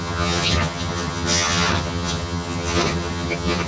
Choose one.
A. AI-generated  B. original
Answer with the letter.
A